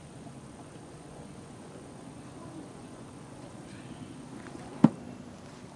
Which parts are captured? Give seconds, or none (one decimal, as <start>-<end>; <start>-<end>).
4.8-5.8